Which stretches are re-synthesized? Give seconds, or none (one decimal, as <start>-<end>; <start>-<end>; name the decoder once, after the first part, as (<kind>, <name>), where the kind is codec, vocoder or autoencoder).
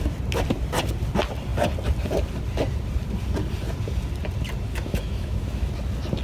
4.7-5.7 (autoencoder, DAC-VAE)